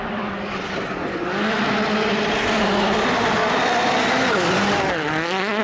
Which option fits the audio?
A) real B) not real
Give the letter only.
A